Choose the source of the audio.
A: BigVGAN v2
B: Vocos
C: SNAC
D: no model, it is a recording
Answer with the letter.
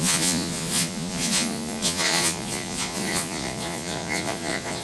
B